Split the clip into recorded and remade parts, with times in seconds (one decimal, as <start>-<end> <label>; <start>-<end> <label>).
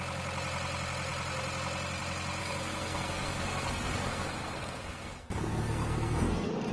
0.0-2.4 recorded; 2.4-6.7 remade